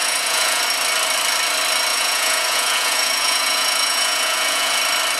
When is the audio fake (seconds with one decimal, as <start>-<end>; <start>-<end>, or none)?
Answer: 0.0-0.6; 1.9-4.8